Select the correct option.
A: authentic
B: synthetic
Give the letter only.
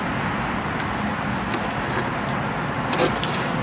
A